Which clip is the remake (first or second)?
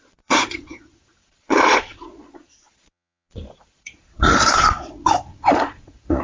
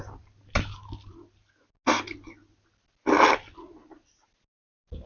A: first